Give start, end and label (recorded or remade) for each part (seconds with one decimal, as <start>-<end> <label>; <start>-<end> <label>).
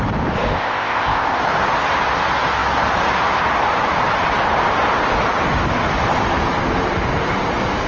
0.0-0.5 recorded; 0.5-1.4 remade; 1.4-7.9 recorded